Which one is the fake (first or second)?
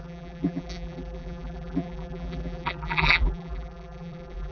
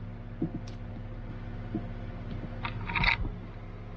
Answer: first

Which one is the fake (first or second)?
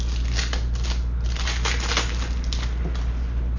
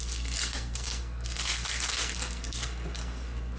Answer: second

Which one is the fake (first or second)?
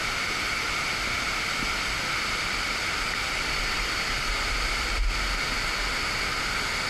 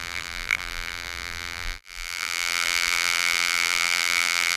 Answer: second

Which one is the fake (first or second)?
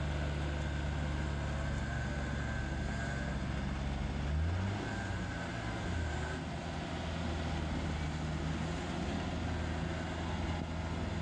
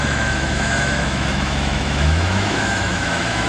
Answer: second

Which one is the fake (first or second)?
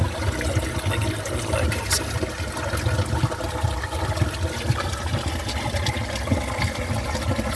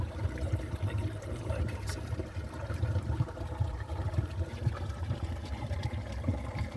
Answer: second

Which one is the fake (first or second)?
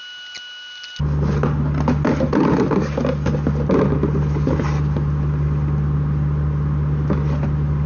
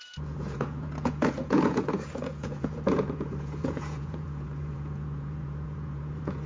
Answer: second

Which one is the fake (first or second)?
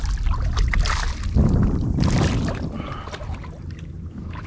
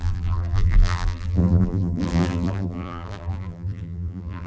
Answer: second